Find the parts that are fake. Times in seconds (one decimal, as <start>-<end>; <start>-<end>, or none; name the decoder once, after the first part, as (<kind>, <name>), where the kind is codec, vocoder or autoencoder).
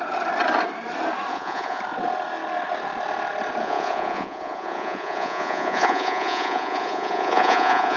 1.3-1.8 (vocoder, Vocos); 3.6-8.0